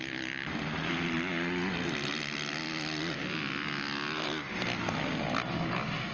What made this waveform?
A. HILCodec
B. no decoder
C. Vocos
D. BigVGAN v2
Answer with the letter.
B